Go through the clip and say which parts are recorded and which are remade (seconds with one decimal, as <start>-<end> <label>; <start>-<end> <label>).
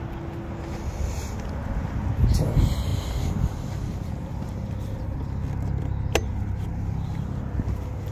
0.0-8.1 recorded